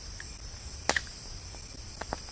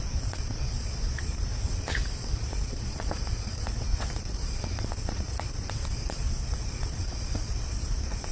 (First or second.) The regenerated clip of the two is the second